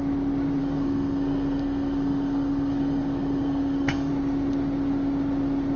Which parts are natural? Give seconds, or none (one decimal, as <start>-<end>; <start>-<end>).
0.0-0.6; 4.1-5.8